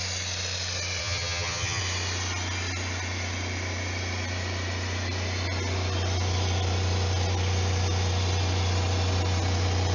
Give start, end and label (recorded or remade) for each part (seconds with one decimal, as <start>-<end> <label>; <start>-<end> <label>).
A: 0.0-1.0 recorded; 1.0-1.8 remade; 1.8-9.9 recorded